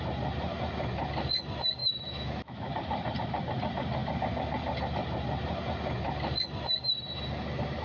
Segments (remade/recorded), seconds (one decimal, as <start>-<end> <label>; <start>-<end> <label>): 0.0-1.8 recorded; 1.8-2.7 remade; 2.7-7.8 recorded